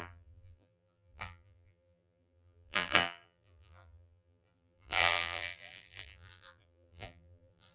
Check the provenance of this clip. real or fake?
fake